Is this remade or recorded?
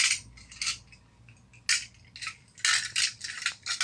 recorded